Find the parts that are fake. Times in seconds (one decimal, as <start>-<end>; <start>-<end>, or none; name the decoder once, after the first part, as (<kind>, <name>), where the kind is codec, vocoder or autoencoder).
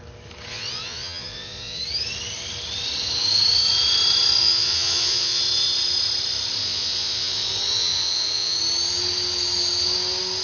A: 0.5-1.8 (vocoder, Vocos); 4.4-5.4; 6.6-8.6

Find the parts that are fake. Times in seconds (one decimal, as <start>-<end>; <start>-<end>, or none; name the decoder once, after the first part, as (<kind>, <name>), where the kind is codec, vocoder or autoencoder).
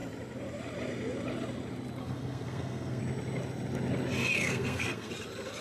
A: 2.0-3.0 (codec, SNAC); 4.4-5.1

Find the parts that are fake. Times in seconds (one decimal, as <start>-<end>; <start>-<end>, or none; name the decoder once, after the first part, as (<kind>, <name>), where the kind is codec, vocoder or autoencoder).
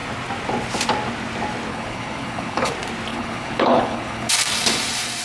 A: 1.7-2.7 (codec, HILCodec); 3.1-4.3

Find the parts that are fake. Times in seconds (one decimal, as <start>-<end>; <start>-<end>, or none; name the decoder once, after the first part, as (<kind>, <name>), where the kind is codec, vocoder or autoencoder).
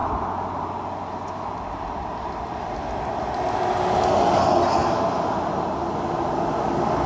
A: 0.0-3.9 (vocoder, BigVGAN v2)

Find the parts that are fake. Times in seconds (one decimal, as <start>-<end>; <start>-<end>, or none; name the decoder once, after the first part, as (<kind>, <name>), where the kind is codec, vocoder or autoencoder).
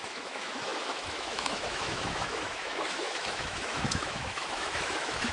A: 0.0-5.3 (autoencoder, DAC-VAE)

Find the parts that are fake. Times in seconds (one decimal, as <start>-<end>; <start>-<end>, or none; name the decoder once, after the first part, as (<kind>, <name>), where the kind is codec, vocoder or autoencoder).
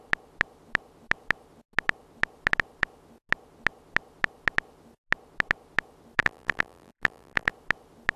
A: 6.2-7.5 (vocoder, BigVGAN v2)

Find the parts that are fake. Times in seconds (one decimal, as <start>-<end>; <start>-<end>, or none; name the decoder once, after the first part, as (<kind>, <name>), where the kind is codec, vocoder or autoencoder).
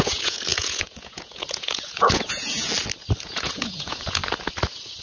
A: 0.0-2.7 (vocoder, Vocos); 3.2-4.2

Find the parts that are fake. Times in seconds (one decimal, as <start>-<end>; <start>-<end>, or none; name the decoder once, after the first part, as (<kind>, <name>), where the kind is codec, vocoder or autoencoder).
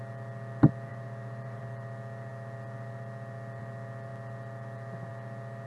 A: 0.9-1.6 (vocoder, BigVGAN v2)